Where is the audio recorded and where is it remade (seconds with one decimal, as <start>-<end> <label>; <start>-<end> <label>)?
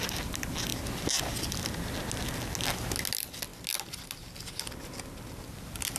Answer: 0.0-6.0 recorded